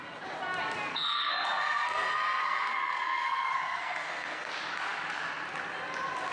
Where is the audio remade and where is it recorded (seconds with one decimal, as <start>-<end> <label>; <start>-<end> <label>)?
0.0-0.9 recorded; 0.9-4.5 remade; 4.5-6.3 recorded